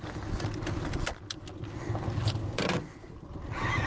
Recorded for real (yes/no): yes